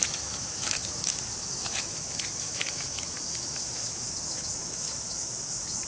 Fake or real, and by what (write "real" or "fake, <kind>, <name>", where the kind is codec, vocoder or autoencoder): fake, autoencoder, DAC-VAE